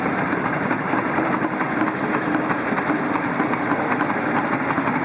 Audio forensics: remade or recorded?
recorded